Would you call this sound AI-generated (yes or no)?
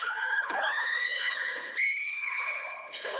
yes